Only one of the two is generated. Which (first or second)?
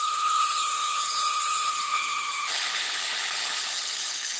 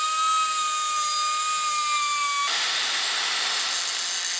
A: first